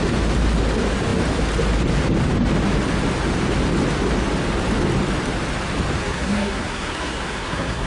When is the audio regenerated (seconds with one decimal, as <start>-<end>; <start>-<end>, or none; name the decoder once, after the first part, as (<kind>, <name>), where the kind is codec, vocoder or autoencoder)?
6.0-7.9 (codec, SNAC)